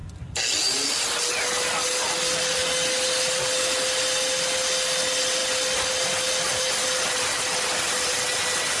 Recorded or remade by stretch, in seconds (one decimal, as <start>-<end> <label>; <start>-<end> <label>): 0.0-8.8 recorded